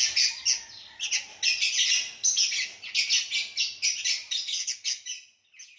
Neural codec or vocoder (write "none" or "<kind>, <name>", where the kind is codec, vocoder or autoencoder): none